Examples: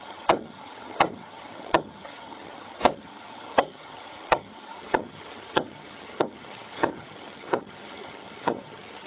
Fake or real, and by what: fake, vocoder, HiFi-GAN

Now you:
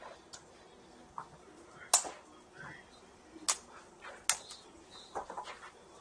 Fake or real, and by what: real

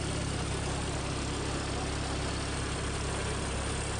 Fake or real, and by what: real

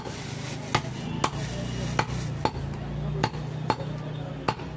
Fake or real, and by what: real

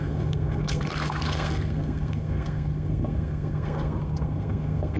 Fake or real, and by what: fake, codec, SNAC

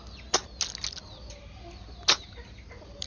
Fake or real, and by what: real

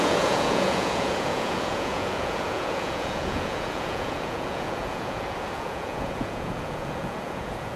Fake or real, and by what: fake, vocoder, Vocos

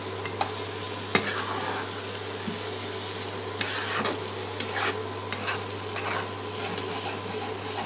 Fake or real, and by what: real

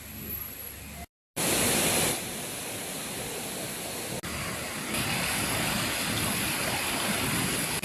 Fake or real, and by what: real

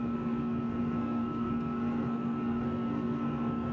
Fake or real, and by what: fake, codec, SNAC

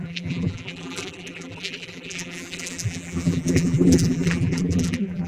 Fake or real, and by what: fake, vocoder, BigVGAN v2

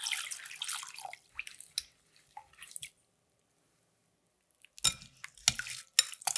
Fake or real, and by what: real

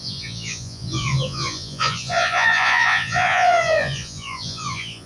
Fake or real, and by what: fake, vocoder, Vocos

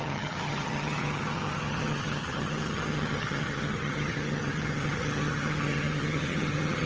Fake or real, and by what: fake, vocoder, HiFi-GAN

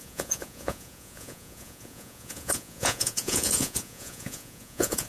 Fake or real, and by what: fake, vocoder, Vocos